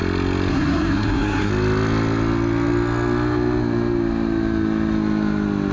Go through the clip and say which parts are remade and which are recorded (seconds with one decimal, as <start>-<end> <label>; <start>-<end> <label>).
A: 0.0-0.5 recorded; 0.5-1.5 remade; 1.5-5.7 recorded